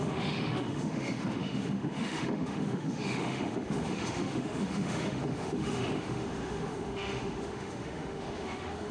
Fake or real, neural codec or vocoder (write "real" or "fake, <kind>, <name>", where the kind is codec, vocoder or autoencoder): fake, autoencoder, DAC-VAE